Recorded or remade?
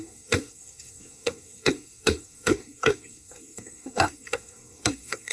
remade